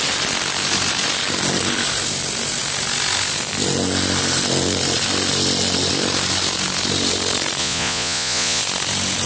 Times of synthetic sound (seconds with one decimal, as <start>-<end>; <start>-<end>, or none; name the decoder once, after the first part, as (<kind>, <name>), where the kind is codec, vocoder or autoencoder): 7.6-8.6 (vocoder, Vocos)